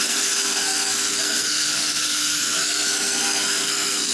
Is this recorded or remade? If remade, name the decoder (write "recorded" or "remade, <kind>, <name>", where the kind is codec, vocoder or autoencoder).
remade, codec, SNAC